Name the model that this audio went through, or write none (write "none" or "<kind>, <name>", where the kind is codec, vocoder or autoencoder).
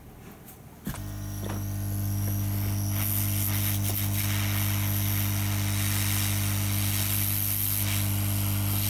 none